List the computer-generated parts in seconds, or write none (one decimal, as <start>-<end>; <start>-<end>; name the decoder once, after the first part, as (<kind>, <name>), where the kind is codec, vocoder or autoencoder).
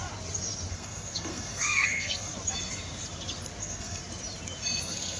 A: 0.7-2.3 (codec, SNAC); 3.6-4.0; 4.8-5.2